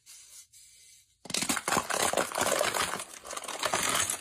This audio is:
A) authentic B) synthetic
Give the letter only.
A